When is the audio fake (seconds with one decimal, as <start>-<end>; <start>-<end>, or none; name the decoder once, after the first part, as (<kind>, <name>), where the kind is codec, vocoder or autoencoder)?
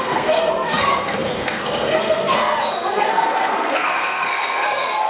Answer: 0.0-5.1 (codec, SNAC)